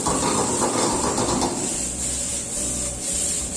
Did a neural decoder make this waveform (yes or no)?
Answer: yes